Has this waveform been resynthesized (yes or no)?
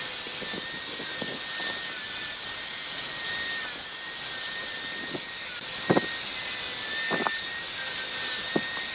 no